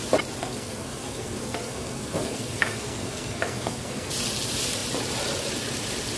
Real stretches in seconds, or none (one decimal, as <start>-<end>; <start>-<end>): 0.0-0.4; 4.1-6.2